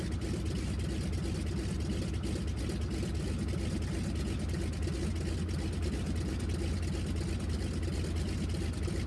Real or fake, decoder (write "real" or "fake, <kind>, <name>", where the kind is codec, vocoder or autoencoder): real